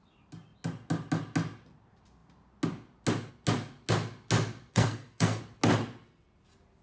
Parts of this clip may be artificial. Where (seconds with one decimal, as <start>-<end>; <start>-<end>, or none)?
4.7-5.4